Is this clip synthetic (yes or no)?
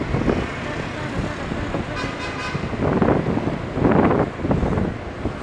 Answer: no